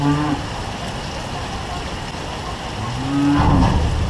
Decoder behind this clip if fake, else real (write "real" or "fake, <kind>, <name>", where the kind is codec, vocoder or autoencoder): real